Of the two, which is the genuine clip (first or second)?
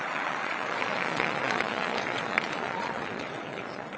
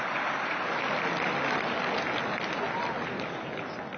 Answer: second